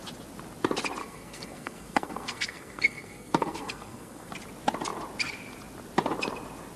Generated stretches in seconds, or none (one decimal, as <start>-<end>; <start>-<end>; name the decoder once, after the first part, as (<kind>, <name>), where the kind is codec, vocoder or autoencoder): 1.0-4.3 (codec, SNAC)